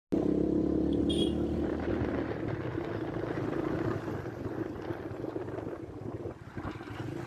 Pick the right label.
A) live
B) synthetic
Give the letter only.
A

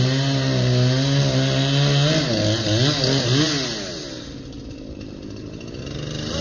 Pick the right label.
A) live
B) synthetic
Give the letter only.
A